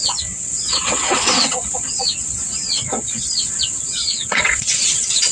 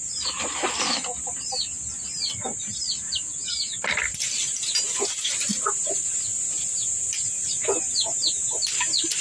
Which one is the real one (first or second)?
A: second